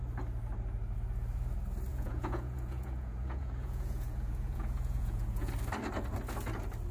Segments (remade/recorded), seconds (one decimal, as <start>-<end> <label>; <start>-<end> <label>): 0.0-1.9 recorded; 1.9-5.5 remade; 5.5-6.9 recorded